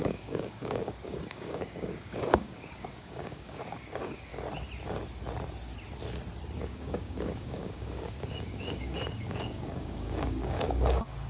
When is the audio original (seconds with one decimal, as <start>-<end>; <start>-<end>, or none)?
4.3-6.6